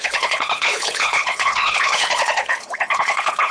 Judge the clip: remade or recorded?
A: remade